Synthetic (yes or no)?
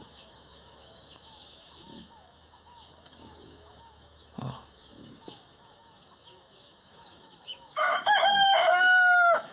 yes